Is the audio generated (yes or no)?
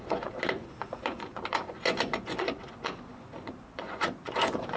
yes